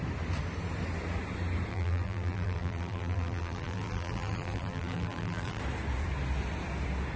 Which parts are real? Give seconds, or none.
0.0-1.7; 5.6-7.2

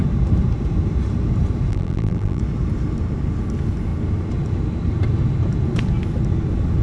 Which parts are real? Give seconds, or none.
0.0-1.7; 2.4-6.8

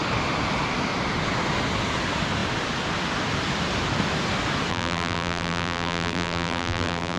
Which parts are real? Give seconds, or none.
0.0-4.7

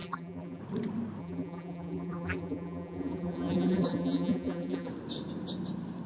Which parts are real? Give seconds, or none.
0.6-1.2; 4.9-6.1

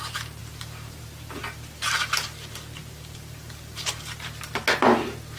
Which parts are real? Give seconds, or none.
0.0-0.4; 1.4-2.8; 4.6-5.4

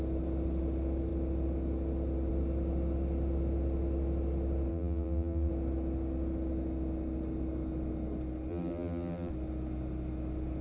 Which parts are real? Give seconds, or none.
0.0-4.7; 5.5-8.5; 9.3-10.6